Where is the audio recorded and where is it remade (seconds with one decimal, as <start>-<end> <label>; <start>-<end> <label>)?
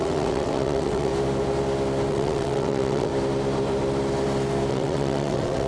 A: 0.0-1.1 remade; 1.1-2.1 recorded; 2.1-3.1 remade; 3.1-4.7 recorded; 4.7-5.7 remade